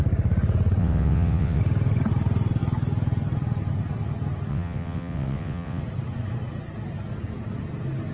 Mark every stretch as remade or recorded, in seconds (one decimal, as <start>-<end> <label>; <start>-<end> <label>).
0.0-0.8 recorded; 0.8-1.6 remade; 1.6-4.5 recorded; 4.5-5.8 remade; 5.8-8.1 recorded